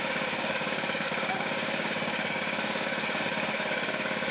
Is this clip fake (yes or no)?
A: yes